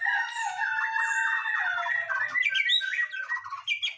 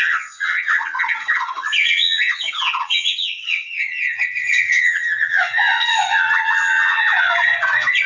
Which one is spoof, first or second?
second